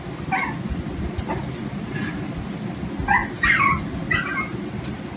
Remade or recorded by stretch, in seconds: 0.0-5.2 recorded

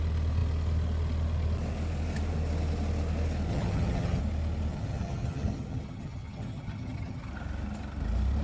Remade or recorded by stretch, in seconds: 0.0-3.5 recorded; 3.5-4.2 remade; 4.2-4.7 recorded; 4.7-7.3 remade; 7.3-8.4 recorded

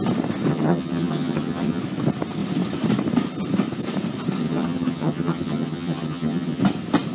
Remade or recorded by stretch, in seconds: 0.0-0.5 recorded; 0.5-1.8 remade; 1.8-4.4 recorded; 4.4-6.6 remade; 6.6-7.1 recorded